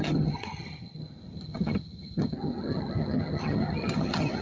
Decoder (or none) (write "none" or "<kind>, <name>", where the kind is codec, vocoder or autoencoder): vocoder, HiFi-GAN